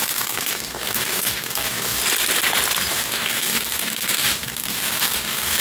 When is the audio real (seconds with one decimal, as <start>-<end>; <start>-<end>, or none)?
2.0-2.9